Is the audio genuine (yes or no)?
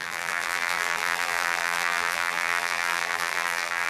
no